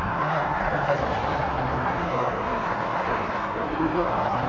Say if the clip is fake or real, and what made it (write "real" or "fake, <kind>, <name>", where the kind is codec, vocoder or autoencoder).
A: fake, codec, SNAC